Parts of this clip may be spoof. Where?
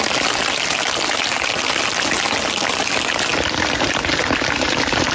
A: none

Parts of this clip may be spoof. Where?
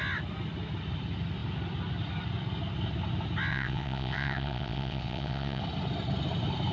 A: 3.5-5.6 (vocoder, WaveNeXt)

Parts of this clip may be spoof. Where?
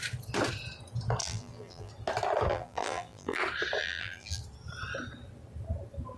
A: 1.2-1.9 (vocoder, BigVGAN v2); 2.5-3.4; 3.8-4.4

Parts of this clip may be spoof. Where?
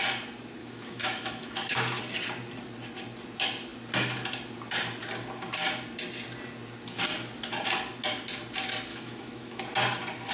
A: 0.6-2.0 (autoencoder, DAC-VAE); 8.9-9.6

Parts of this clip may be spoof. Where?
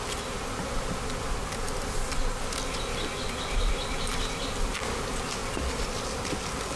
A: none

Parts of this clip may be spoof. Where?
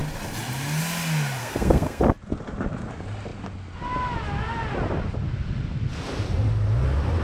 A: 1.4-2.0 (codec, SNAC)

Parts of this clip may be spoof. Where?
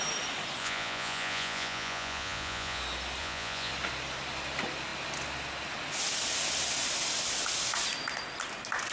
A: 0.6-2.8 (vocoder, Vocos); 3.2-3.7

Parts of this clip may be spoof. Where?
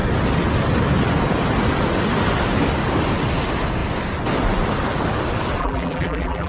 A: 5.6-6.5 (vocoder, BigVGAN v2)